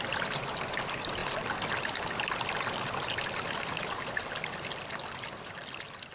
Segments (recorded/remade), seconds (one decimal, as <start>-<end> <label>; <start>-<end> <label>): 0.0-6.1 recorded